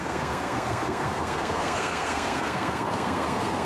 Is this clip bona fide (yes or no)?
no